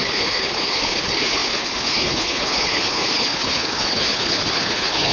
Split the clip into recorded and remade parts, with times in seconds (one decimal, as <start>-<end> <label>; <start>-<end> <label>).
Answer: 0.0-5.1 remade